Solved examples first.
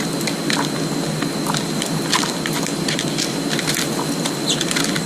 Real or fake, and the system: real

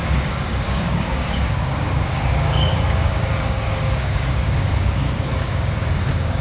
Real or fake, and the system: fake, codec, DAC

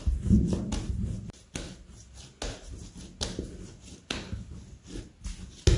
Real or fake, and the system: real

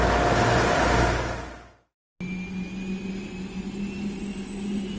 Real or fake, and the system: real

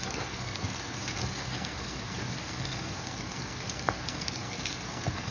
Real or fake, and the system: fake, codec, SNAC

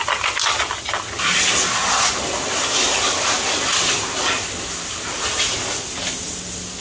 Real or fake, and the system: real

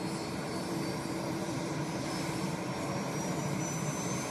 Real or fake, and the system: fake, vocoder, BigVGAN v2